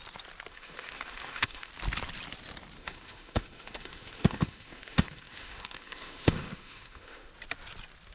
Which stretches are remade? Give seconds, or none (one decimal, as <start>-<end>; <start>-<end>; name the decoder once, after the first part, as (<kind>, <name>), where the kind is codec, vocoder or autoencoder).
0.5-1.7 (autoencoder, DAC-VAE); 2.8-7.3